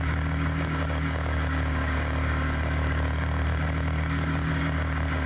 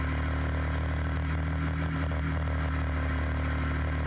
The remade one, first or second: first